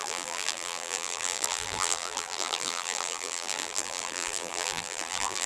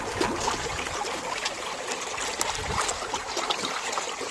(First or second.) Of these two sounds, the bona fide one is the second